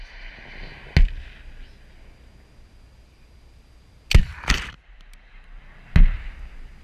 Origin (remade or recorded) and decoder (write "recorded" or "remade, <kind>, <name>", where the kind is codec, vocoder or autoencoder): recorded